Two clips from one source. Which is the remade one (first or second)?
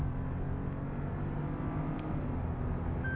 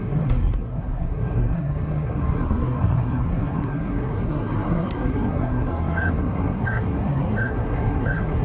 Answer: second